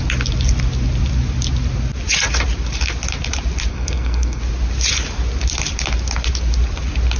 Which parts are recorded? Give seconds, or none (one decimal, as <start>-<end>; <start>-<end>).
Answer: 0.0-3.7; 4.4-7.2